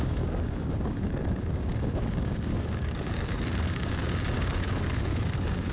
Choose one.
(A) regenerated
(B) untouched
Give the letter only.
A